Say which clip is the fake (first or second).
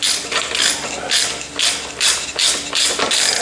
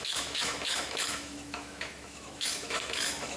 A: second